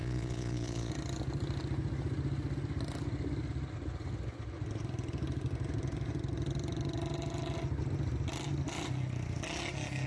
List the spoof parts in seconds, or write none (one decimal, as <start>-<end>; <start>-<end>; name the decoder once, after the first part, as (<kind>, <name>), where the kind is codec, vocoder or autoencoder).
0.0-0.9 (vocoder, Vocos)